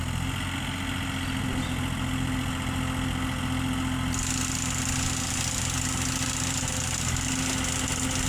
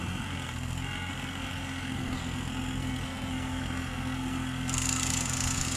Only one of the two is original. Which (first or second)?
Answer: first